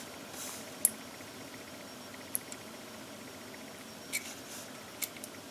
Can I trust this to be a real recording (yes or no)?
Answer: yes